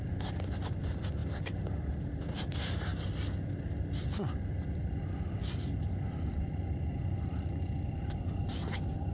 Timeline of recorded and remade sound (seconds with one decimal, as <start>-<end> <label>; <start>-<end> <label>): 0.0-9.1 recorded

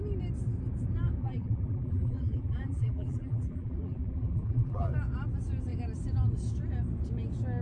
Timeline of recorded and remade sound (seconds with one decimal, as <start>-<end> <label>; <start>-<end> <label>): 0.0-1.2 recorded; 1.2-4.9 remade; 4.9-7.6 recorded